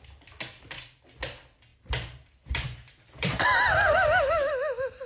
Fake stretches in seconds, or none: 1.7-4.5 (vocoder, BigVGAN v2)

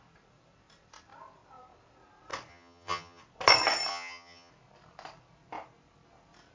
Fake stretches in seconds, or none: 2.5-3.2 (vocoder, HiFi-GAN); 3.9-4.5

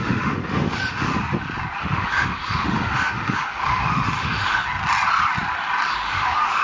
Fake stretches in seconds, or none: 0.0-1.1 (autoencoder, DAC-VAE); 1.8-4.6; 5.9-6.6

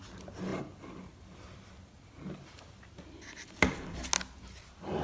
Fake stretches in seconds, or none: none

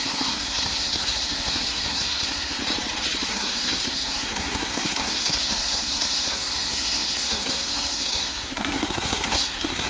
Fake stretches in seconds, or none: 0.0-2.6 (codec, SNAC); 3.3-9.9

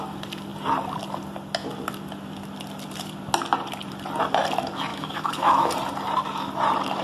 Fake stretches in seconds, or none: 4.9-5.7 (autoencoder, DAC-VAE)

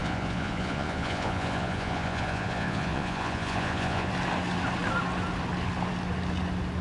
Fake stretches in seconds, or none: 0.0-4.1 (vocoder, Vocos)